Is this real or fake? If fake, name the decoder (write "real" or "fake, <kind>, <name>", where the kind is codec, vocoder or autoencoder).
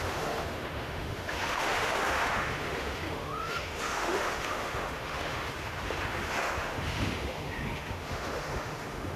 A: fake, autoencoder, DAC-VAE